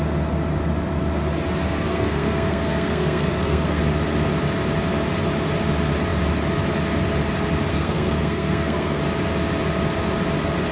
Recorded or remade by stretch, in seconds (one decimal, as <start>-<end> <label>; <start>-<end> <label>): 0.0-1.9 recorded; 1.9-3.8 remade; 3.8-7.7 recorded; 7.7-9.0 remade; 9.0-10.7 recorded